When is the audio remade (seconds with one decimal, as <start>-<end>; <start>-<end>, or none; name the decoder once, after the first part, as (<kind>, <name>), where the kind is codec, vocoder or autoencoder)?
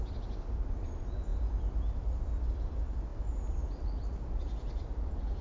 none